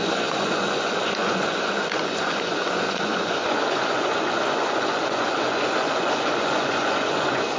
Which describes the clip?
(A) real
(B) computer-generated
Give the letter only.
B